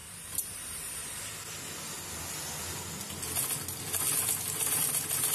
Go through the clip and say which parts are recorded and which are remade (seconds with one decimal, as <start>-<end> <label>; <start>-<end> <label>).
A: 0.0-1.2 remade; 1.2-5.3 recorded